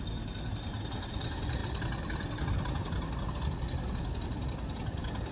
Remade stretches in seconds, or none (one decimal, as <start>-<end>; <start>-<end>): none